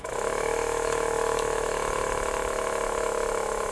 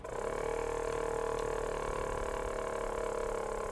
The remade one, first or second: first